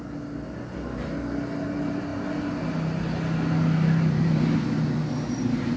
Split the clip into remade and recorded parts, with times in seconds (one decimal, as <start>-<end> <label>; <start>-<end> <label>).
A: 0.0-5.8 recorded